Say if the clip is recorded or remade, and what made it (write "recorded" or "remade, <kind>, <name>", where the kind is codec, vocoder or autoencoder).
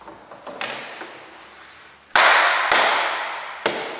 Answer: recorded